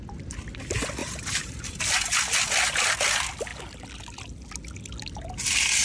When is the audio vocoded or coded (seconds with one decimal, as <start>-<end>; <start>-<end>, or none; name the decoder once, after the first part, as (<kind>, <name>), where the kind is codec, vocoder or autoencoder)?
1.0-1.8 (vocoder, BigVGAN v2)